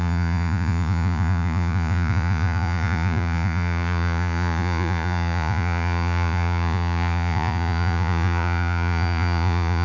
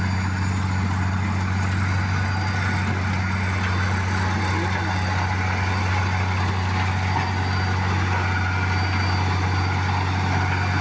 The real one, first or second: second